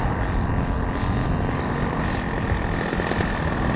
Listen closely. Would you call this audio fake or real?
real